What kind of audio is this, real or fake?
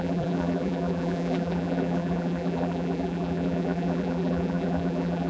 fake